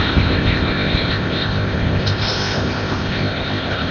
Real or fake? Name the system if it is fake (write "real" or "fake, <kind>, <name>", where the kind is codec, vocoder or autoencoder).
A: fake, codec, ZipCodec